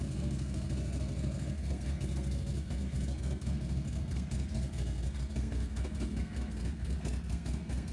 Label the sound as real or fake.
fake